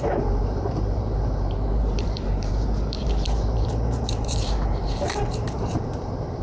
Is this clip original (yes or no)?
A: no